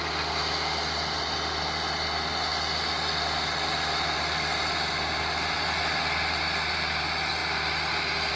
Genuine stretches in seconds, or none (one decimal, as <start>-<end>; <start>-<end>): 0.0-8.3